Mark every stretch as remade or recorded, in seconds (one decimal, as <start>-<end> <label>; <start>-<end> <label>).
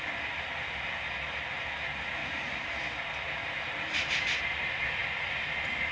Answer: 0.0-2.2 recorded; 2.2-2.9 remade; 2.9-3.4 recorded; 3.4-4.4 remade; 4.4-5.9 recorded